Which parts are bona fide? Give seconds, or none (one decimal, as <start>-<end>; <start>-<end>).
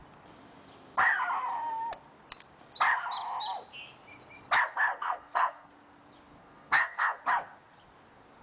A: 0.0-4.9; 5.7-6.4; 7.2-8.4